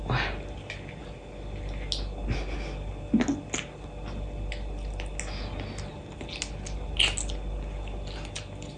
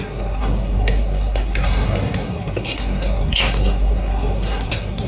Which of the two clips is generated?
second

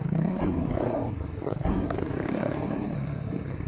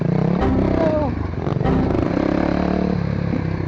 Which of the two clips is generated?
first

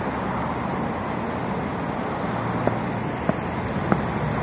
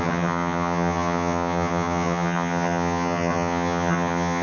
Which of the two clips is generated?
second